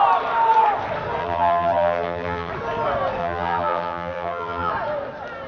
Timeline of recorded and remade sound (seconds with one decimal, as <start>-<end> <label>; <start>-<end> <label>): 0.0-1.2 recorded; 1.2-2.5 remade; 2.5-3.2 recorded; 3.2-4.7 remade; 4.7-5.5 recorded